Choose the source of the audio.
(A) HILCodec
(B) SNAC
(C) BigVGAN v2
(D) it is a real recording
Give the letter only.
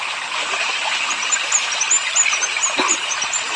D